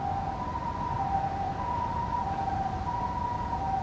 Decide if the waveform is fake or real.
real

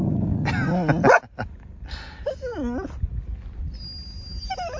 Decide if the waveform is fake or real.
real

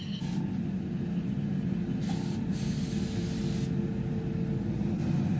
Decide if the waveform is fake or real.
real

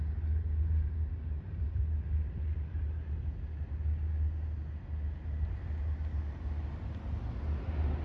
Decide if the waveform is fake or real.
real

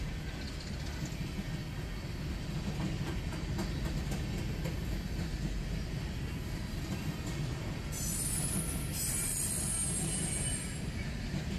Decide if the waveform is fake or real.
real